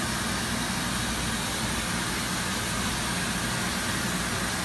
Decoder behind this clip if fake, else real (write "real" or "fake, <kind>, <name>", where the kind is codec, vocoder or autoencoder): real